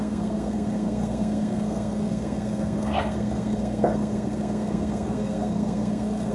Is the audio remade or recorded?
remade